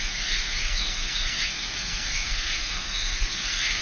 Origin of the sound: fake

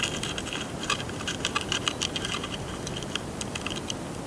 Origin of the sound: real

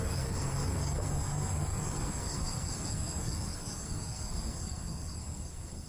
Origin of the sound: fake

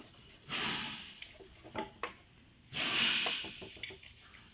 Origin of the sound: real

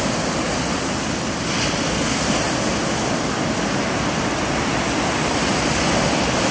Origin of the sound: real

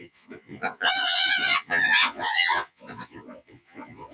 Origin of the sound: fake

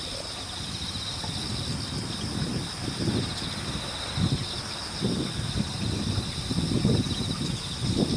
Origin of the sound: real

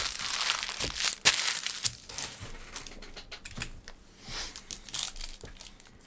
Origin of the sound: real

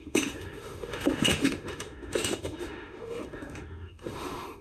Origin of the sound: fake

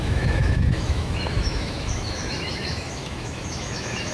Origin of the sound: fake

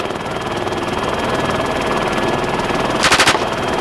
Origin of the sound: real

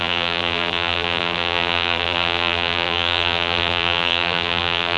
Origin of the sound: fake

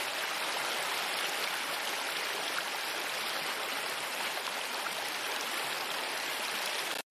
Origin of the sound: fake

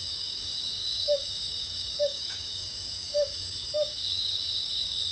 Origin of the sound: fake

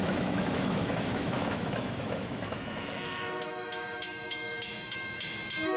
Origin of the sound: fake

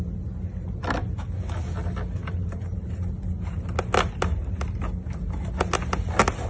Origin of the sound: real